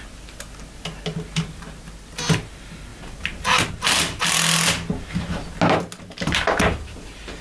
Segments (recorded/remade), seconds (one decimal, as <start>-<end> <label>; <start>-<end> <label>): 0.0-7.4 recorded